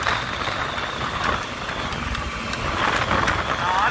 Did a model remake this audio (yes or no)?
no